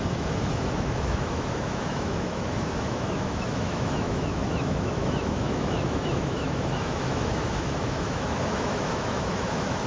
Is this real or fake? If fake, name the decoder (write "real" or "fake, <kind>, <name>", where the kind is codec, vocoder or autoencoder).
fake, autoencoder, DAC-VAE